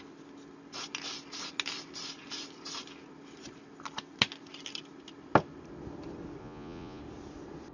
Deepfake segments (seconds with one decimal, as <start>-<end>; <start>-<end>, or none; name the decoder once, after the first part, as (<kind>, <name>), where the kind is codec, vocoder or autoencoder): 6.4-7.0 (vocoder, Vocos)